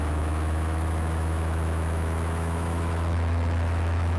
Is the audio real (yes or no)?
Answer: no